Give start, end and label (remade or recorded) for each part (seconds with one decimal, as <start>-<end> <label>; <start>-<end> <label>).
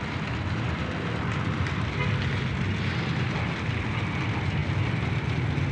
0.0-5.7 recorded